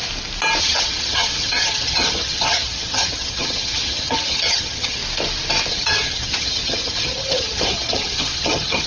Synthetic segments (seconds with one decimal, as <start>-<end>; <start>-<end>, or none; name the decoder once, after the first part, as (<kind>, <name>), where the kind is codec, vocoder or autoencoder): 0.6-5.0 (vocoder, HiFi-GAN); 5.7-8.9